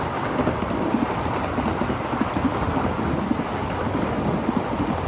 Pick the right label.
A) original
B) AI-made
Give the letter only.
A